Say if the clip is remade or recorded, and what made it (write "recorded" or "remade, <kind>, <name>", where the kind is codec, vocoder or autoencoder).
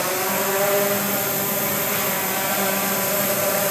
recorded